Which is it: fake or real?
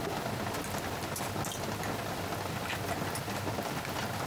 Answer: real